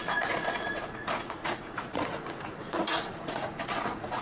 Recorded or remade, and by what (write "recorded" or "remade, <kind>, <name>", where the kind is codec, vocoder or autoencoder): remade, vocoder, Vocos